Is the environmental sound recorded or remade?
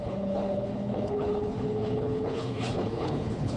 remade